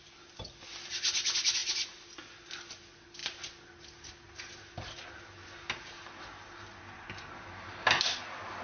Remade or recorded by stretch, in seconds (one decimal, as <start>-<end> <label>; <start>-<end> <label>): 0.0-8.6 recorded